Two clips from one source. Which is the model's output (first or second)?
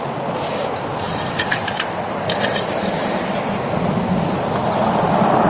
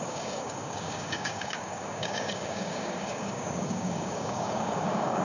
second